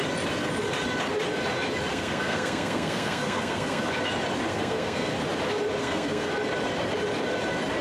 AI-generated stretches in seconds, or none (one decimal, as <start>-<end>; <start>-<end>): 1.9-3.8; 4.5-5.1; 5.8-6.3